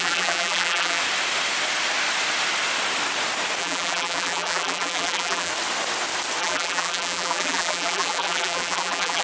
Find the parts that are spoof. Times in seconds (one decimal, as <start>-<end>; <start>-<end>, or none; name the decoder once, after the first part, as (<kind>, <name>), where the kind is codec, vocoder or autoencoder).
0.0-1.0 (vocoder, BigVGAN v2); 3.6-5.5; 6.4-9.2

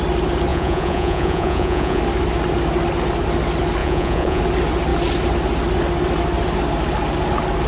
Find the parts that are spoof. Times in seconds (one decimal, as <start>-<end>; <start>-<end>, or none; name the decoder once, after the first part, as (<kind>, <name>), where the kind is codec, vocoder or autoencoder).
0.5-2.0 (vocoder, Vocos); 3.8-4.4

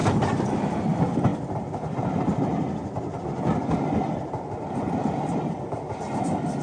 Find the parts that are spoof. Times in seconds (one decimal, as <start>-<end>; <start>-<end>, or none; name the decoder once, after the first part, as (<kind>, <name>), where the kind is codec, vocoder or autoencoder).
none

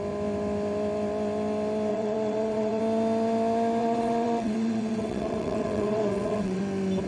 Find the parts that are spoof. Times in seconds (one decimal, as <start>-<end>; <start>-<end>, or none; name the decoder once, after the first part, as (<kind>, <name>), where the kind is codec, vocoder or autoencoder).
1.9-2.8 (vocoder, WaveNeXt); 3.8-6.6

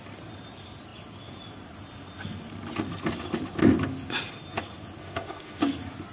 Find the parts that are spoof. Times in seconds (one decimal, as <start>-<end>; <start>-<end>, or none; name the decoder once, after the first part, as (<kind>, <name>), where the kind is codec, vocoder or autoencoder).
5.0-5.6 (autoencoder, DAC-VAE)